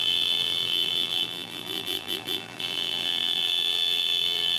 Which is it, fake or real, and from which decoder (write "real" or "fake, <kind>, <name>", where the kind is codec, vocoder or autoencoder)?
fake, vocoder, BigVGAN v2